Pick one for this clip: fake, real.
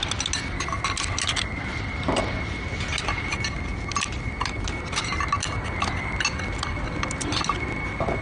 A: real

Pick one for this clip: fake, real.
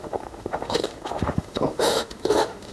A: fake